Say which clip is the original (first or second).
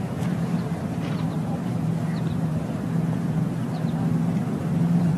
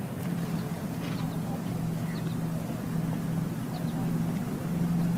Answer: second